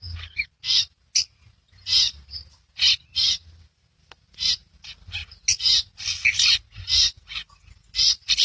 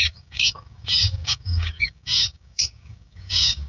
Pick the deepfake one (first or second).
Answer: second